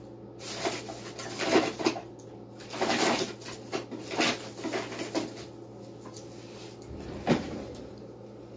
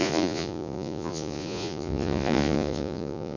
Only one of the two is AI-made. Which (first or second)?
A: second